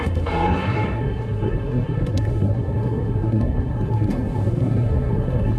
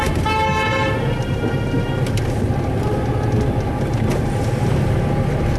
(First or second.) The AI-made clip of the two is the first